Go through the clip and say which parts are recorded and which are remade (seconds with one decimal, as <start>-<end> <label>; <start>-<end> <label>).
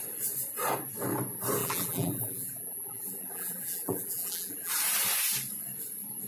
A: 0.0-1.6 recorded; 1.6-4.7 remade; 4.7-6.3 recorded